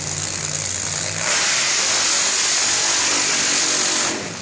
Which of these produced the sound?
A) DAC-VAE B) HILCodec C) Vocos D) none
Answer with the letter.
D